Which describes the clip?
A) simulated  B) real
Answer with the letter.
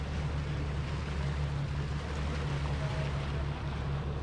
B